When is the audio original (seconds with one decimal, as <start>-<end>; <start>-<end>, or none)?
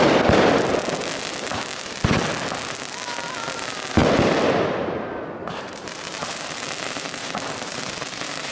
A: 0.0-5.4